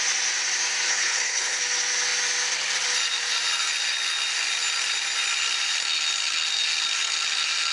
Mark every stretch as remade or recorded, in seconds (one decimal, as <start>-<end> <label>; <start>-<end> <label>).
0.0-0.9 recorded; 0.9-1.6 remade; 1.6-7.7 recorded